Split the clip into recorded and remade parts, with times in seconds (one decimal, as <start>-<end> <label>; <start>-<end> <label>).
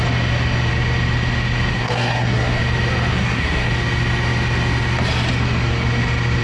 0.0-1.7 recorded; 1.7-2.6 remade; 2.6-3.1 recorded; 3.1-3.7 remade; 3.7-6.4 recorded